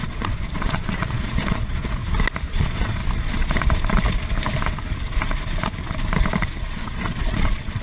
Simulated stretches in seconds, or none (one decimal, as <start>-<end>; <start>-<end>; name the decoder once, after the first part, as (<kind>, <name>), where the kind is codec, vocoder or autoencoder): 0.0-2.0 (vocoder, Vocos); 2.5-3.0; 6.6-7.8